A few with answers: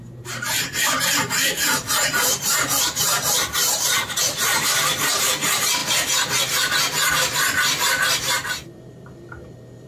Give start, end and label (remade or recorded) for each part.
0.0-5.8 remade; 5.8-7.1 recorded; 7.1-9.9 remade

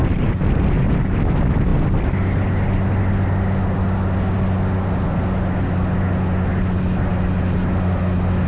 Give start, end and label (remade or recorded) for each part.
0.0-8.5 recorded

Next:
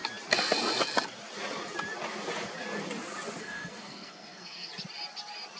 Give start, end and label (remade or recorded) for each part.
0.0-3.4 recorded; 3.4-4.7 remade; 4.7-5.6 recorded

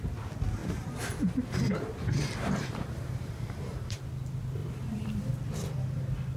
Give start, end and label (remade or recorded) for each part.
0.0-0.6 recorded; 0.6-4.0 remade; 4.0-4.6 recorded; 4.6-5.3 remade; 5.3-6.4 recorded

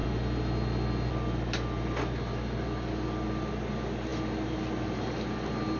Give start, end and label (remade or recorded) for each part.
0.0-5.8 recorded

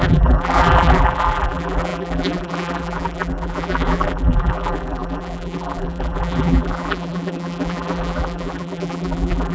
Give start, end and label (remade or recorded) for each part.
0.0-9.5 remade